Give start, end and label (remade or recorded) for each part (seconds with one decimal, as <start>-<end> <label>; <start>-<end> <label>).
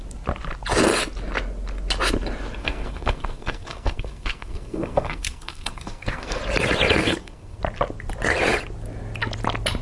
0.0-2.6 recorded; 2.6-6.4 remade; 6.4-7.0 recorded; 7.0-7.6 remade; 7.6-9.8 recorded